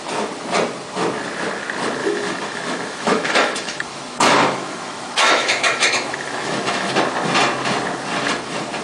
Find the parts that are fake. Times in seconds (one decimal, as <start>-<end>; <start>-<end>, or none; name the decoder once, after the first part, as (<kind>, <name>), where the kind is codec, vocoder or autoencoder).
2.0-6.9 (autoencoder, DAC-VAE)